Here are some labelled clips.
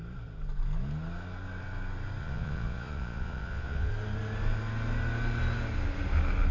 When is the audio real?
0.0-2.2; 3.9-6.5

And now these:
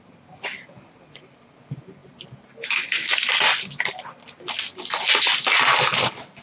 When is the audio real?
0.0-6.4

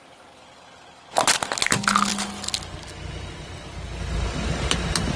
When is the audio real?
0.0-5.2

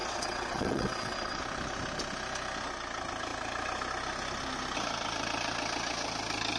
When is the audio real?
1.4-6.6

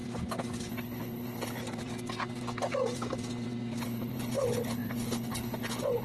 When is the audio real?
0.0-0.7; 1.6-3.8

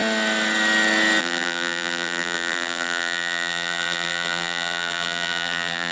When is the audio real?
0.0-1.2

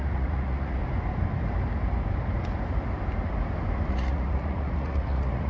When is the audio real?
0.8-3.9

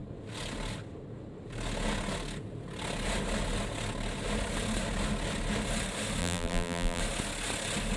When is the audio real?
0.0-6.2; 7.0-8.0